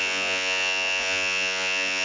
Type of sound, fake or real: fake